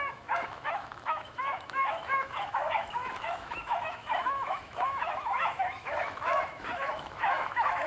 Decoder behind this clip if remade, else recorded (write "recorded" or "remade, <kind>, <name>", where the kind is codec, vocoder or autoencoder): remade, autoencoder, DAC-VAE